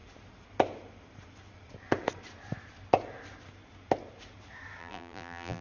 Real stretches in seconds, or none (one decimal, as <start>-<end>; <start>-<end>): 0.0-4.8